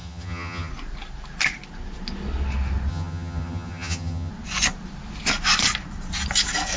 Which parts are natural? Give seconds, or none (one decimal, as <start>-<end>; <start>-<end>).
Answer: 0.7-2.9; 4.3-6.8